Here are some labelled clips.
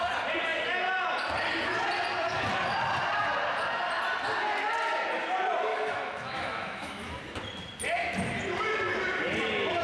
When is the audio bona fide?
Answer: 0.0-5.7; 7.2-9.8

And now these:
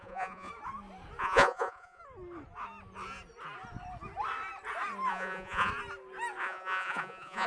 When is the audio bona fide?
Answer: 0.5-1.2; 2.0-5.1; 5.7-6.4

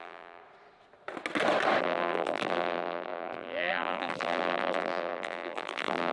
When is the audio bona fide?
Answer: 0.4-1.8

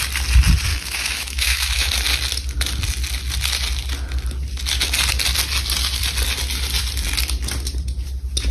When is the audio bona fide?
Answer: 0.0-0.7; 1.9-8.5

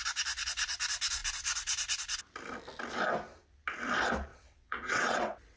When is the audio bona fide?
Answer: 0.0-4.3